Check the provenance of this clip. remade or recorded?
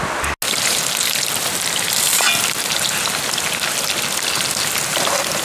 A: recorded